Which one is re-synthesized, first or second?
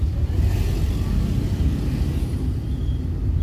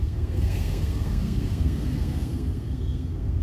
second